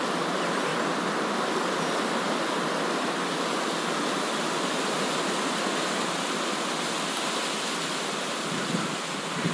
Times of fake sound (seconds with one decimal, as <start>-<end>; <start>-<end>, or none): none